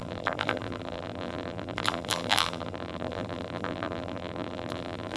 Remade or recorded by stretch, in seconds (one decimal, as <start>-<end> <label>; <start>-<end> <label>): 0.0-5.2 remade